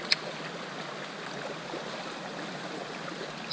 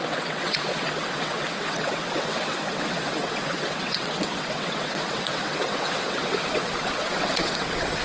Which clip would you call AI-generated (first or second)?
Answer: second